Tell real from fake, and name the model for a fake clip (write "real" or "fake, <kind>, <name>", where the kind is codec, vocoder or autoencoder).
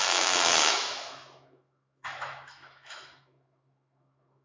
fake, autoencoder, DAC-VAE